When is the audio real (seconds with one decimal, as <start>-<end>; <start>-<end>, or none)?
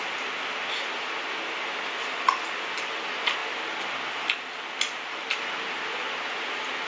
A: 0.0-6.9